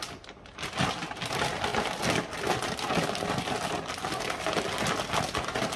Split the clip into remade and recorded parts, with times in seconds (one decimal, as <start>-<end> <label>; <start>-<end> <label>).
0.0-5.8 recorded